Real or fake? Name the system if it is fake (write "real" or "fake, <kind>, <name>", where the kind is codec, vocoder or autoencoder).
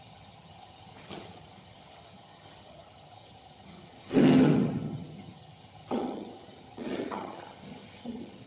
fake, vocoder, HiFi-GAN